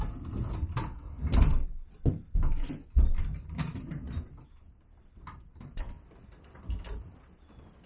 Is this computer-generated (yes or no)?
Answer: no